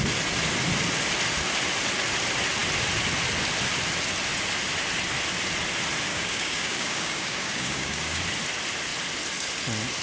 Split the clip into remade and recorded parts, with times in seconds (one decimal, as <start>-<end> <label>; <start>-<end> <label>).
0.0-6.1 recorded; 6.1-8.2 remade; 8.2-10.0 recorded